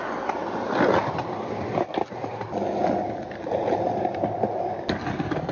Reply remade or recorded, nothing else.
recorded